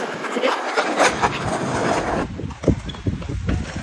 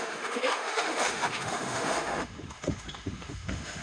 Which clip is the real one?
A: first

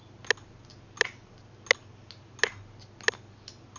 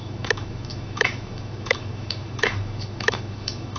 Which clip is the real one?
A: first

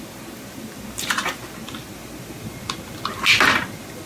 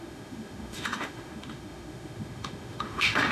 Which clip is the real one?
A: first